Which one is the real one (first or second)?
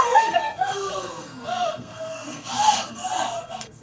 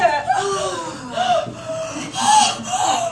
second